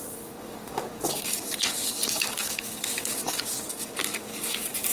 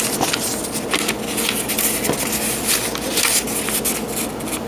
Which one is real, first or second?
second